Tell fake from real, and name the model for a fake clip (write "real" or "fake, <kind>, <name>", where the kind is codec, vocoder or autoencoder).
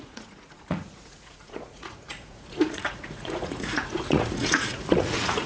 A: fake, vocoder, Vocos